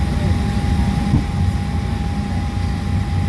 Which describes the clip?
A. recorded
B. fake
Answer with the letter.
A